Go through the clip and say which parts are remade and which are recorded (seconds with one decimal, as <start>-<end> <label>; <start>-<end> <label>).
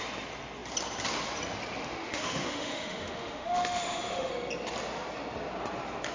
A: 0.0-1.8 recorded; 1.8-4.3 remade; 4.3-6.1 recorded